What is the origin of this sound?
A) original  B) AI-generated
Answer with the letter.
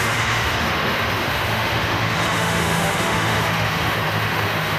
B